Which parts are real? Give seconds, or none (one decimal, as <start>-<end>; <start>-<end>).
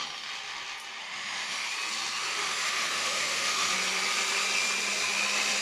0.0-1.0; 1.7-2.3; 3.7-5.6